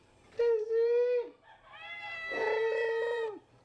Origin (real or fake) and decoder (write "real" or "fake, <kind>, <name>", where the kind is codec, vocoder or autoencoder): fake, vocoder, BigVGAN v2